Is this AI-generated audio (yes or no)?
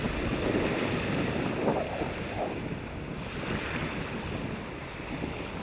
no